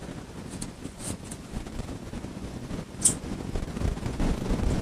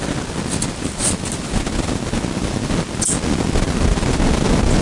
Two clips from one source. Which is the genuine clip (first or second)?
second